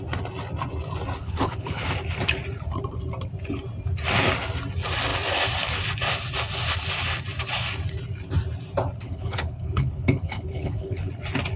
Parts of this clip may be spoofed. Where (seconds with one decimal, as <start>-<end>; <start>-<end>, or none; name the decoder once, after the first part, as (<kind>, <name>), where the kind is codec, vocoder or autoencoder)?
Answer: 1.2-1.9 (codec, HILCodec); 9.0-11.1